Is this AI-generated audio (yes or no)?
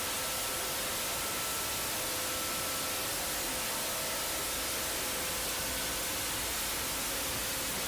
no